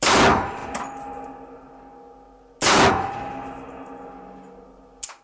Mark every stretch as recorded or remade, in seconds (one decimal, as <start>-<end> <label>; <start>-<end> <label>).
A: 0.0-5.2 recorded